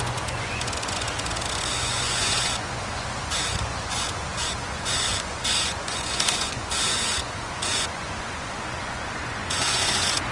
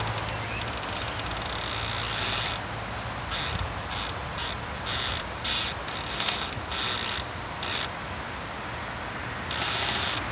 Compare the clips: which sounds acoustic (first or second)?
second